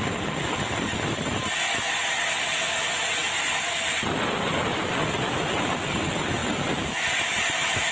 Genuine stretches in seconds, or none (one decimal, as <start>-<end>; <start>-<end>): 0.0-7.9